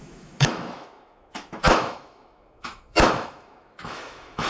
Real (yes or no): no